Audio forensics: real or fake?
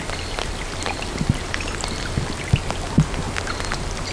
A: real